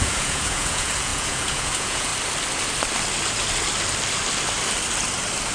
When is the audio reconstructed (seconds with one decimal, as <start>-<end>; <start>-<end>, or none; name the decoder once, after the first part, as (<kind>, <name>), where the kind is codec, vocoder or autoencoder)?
0.0-2.1 (vocoder, Vocos)